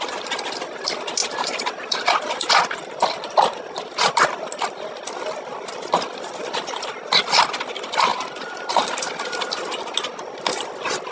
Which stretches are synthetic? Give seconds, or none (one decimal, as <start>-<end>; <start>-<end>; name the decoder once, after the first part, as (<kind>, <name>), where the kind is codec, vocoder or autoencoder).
1.2-4.2 (vocoder, BigVGAN v2); 8.1-8.7